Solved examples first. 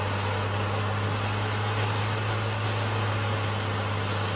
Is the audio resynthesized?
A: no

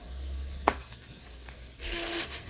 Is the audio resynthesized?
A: yes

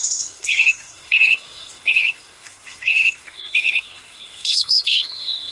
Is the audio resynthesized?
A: yes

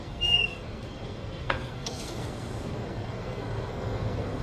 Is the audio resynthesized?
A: yes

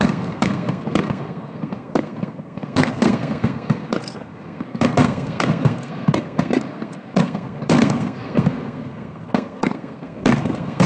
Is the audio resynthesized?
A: yes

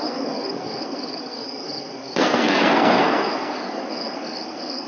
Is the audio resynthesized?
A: yes